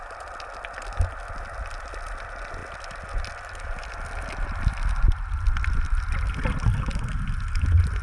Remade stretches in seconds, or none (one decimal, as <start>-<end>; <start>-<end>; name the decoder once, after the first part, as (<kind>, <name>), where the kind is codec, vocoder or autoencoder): none